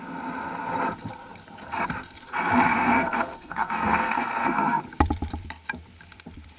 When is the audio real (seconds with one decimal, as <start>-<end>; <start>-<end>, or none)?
0.0-2.7; 4.8-6.6